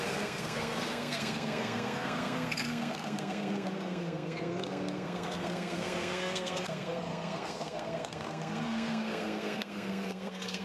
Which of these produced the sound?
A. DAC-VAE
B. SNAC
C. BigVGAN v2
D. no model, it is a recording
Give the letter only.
B